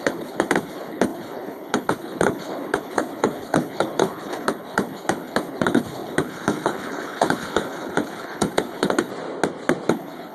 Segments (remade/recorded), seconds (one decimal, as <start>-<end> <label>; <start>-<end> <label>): 0.0-9.1 remade; 9.1-9.9 recorded; 9.9-10.3 remade